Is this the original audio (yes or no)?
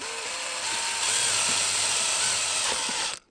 yes